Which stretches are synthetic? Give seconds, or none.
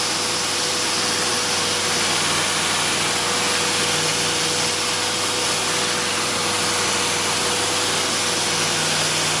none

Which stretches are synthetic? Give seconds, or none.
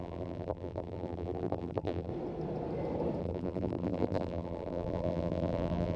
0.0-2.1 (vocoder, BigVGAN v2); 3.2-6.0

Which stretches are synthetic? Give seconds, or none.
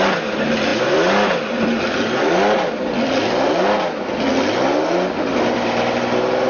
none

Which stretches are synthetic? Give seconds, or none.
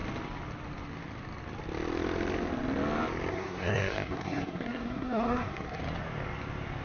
3.3-5.8 (codec, SNAC)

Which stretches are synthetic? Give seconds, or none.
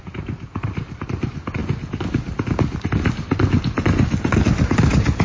0.0-1.6 (vocoder, BigVGAN v2); 4.7-5.2